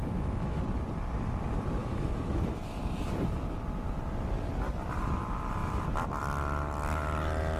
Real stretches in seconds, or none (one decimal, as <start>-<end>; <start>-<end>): 0.6-1.8; 2.8-7.6